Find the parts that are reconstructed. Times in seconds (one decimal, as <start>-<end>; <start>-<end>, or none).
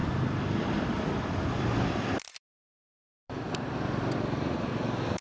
0.0-5.2